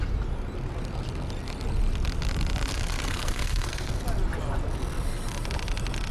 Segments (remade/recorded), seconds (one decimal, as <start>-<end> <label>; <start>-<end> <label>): 0.0-2.7 recorded; 2.7-4.0 remade; 4.0-6.1 recorded